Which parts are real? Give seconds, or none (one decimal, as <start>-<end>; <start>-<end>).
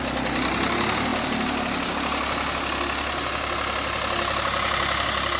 0.0-5.4